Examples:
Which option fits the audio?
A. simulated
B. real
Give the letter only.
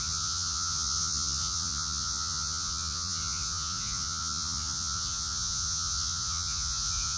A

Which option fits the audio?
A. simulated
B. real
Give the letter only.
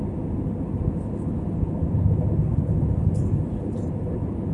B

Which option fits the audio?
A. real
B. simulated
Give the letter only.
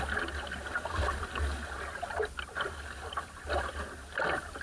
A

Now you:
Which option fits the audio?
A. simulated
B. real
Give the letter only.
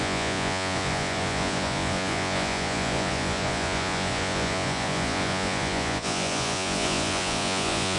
A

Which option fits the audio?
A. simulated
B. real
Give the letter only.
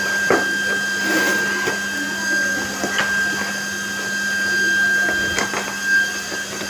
B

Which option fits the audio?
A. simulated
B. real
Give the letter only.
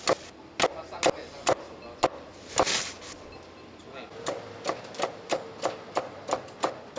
B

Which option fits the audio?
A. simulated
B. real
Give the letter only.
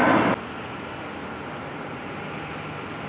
B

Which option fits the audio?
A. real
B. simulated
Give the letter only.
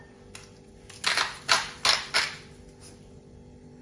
A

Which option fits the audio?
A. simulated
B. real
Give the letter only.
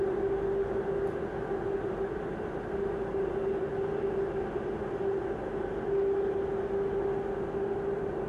B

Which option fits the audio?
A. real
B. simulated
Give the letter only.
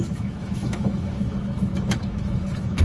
B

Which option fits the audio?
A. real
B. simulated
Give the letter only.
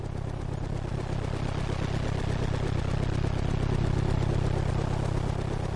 A